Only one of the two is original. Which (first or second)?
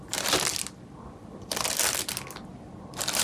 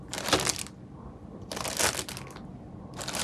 second